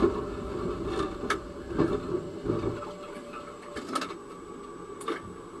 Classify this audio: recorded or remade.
recorded